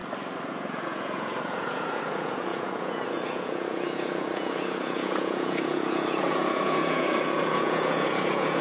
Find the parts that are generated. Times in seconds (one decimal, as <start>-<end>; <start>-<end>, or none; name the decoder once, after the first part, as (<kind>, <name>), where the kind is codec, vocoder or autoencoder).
0.5-8.6 (vocoder, Vocos)